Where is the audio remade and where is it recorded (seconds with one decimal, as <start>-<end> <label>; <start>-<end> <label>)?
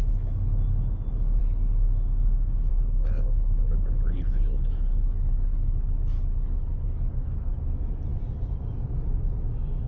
0.0-2.7 recorded; 2.7-7.6 remade; 7.6-9.9 recorded